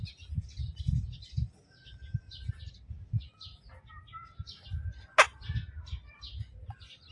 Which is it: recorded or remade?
recorded